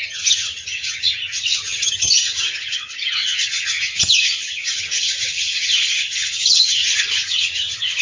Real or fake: fake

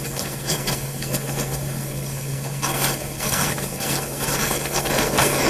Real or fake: fake